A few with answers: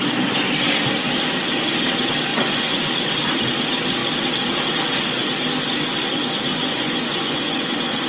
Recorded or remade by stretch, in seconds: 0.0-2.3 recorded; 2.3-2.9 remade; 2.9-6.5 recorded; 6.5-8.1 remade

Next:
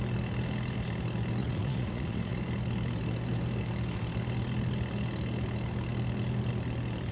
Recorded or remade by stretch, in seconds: 0.0-1.4 recorded; 1.4-2.4 remade; 2.4-7.1 recorded